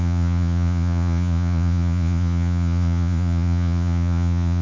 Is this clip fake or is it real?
fake